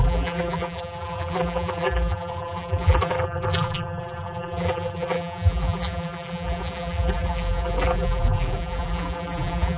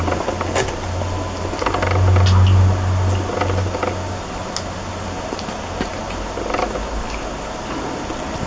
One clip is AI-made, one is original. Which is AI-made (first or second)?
first